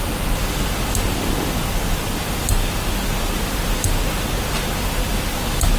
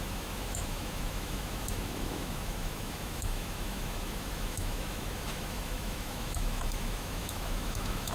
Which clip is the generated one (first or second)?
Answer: second